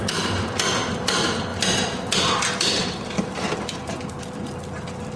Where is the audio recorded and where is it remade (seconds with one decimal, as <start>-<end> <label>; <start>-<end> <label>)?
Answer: 0.0-5.2 recorded